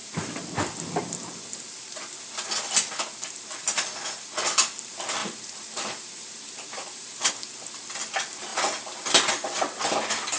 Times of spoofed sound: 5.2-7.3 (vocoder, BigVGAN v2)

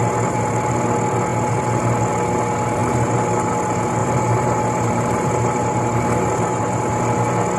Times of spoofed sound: 2.8-3.5 (vocoder, BigVGAN v2); 4.0-7.0

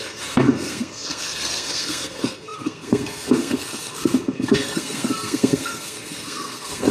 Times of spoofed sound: 0.0-6.9 (codec, SNAC)

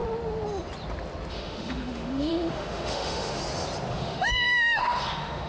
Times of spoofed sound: 1.3-3.4 (autoencoder, DAC-VAE); 3.9-5.5

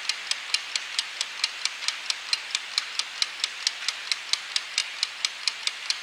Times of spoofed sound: 1.0-2.8 (vocoder, BigVGAN v2)